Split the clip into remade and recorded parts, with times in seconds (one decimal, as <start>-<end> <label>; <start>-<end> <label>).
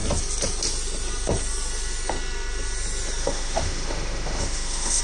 0.0-3.2 recorded; 3.2-5.0 remade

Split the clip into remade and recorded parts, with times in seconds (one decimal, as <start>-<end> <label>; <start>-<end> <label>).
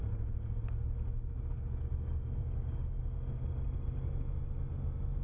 0.0-2.4 recorded; 2.4-3.0 remade; 3.0-5.2 recorded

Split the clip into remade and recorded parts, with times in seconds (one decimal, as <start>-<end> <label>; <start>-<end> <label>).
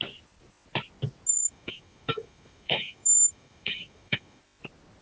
0.0-1.4 recorded; 1.4-4.4 remade; 4.4-5.0 recorded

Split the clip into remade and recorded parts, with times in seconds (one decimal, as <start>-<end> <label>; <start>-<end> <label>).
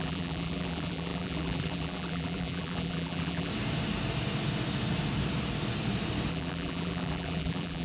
0.0-3.5 remade; 3.5-6.3 recorded; 6.3-7.8 remade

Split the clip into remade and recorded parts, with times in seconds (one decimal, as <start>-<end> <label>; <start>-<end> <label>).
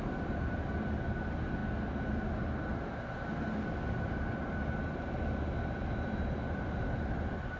0.0-7.6 recorded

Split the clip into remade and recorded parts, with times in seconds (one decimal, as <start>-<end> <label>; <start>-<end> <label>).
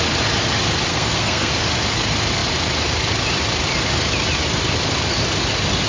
0.0-0.9 recorded; 0.9-1.5 remade; 1.5-5.9 recorded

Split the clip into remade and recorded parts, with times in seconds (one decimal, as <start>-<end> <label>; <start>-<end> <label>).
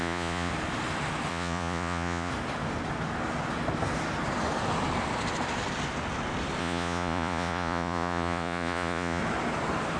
0.0-0.5 remade; 0.5-1.3 recorded; 1.3-2.3 remade; 2.3-6.6 recorded; 6.6-9.2 remade; 9.2-10.0 recorded